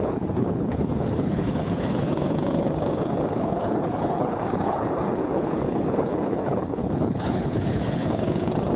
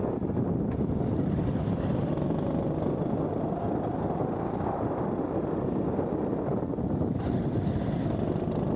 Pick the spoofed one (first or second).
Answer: first